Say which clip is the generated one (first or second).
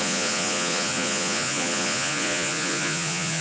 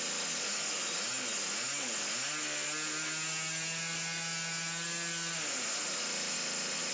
first